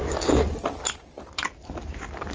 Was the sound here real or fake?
real